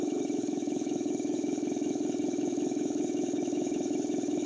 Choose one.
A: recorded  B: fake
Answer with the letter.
B